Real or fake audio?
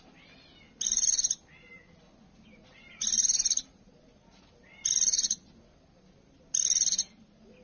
real